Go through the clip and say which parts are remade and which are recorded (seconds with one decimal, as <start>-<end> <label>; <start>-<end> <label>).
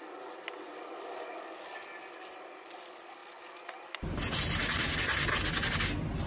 0.0-6.3 recorded